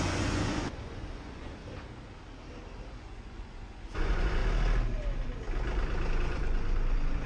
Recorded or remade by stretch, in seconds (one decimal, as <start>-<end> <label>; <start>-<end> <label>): 0.0-1.6 remade; 1.6-3.0 recorded; 3.0-4.4 remade; 4.4-6.1 recorded; 6.1-7.3 remade